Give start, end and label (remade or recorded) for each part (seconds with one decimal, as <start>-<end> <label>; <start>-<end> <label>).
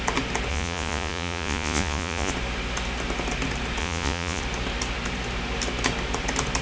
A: 0.0-0.5 recorded; 0.5-2.3 remade; 2.3-3.8 recorded; 3.8-4.4 remade; 4.4-6.6 recorded